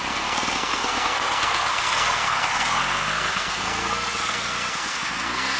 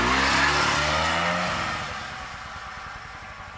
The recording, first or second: second